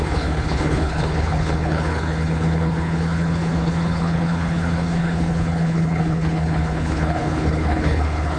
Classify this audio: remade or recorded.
remade